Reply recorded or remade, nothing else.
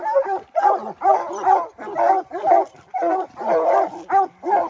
remade